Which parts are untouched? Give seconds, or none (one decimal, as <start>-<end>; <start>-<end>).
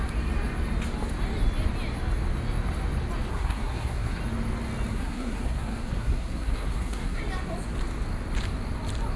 0.0-3.3; 4.2-4.9; 7.2-9.2